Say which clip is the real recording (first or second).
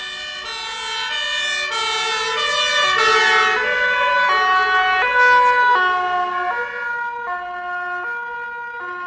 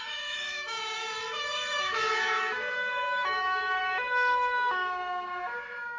first